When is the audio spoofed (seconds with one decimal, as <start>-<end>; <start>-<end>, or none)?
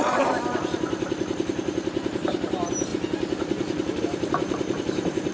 0.0-2.9; 4.0-5.3